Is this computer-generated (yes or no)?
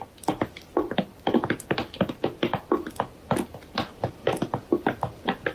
no